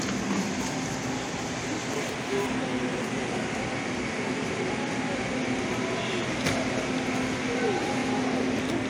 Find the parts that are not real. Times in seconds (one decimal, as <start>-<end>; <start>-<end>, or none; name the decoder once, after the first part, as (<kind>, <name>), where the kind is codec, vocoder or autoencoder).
none